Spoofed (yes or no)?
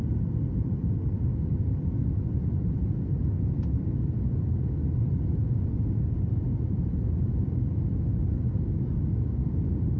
no